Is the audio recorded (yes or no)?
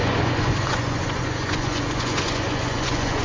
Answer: no